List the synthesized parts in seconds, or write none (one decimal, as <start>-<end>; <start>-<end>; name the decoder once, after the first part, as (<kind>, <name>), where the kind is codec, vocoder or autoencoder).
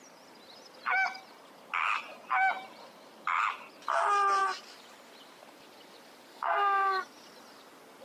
6.3-7.0 (codec, SNAC)